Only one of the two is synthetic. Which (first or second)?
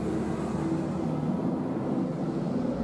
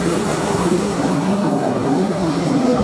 second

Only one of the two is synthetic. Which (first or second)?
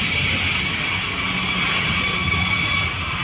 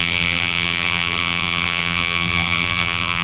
second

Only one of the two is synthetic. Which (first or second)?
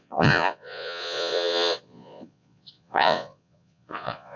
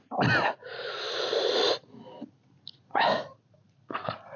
first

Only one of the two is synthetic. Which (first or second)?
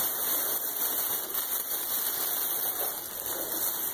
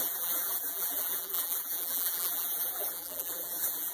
second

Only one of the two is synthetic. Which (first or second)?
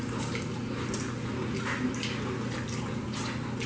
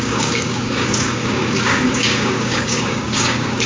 second